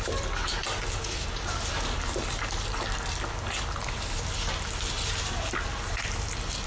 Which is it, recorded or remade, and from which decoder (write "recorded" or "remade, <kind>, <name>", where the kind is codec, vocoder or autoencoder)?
recorded